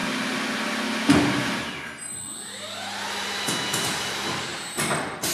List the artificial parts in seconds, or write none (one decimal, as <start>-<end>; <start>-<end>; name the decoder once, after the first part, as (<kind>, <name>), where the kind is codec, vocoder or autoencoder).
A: none